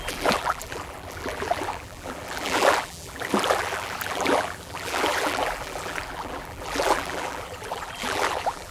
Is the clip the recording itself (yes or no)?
no